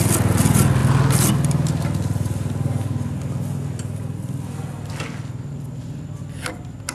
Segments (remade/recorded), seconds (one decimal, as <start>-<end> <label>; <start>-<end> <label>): 0.0-6.9 recorded